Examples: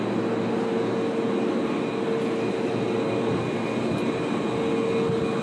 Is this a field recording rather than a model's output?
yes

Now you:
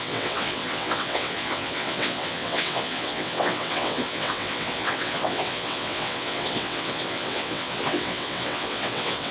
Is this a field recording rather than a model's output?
no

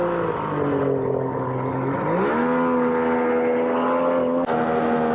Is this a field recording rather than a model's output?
yes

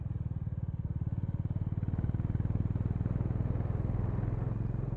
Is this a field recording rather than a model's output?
yes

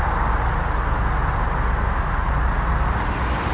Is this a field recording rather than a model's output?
yes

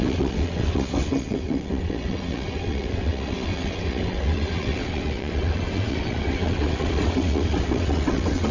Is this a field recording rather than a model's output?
no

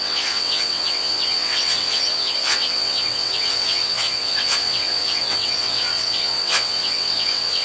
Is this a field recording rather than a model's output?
no